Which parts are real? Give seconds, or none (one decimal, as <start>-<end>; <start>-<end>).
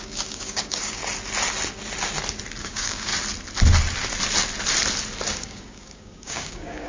1.0-2.6; 3.1-5.3